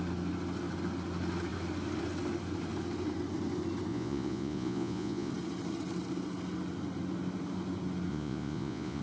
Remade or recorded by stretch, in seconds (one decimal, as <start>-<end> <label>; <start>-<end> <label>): 0.0-3.9 recorded; 3.9-5.3 remade; 5.3-8.1 recorded; 8.1-9.0 remade